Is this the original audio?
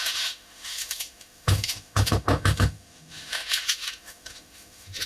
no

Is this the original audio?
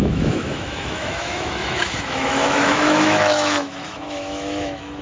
no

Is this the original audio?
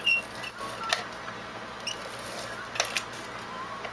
yes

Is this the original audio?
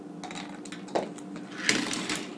yes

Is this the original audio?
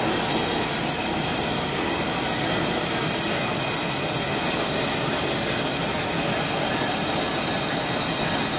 yes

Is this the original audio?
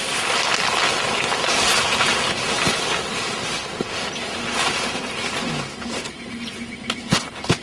yes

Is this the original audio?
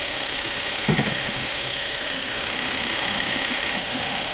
no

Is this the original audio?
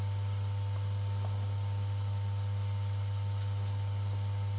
yes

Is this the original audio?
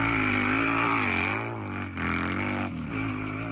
yes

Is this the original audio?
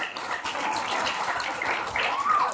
yes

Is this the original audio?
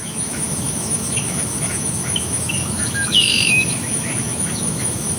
no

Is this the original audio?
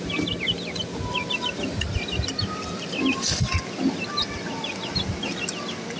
yes